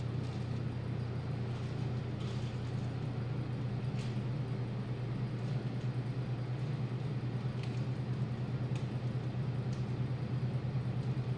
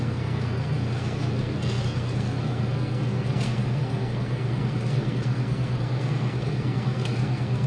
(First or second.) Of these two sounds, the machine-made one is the second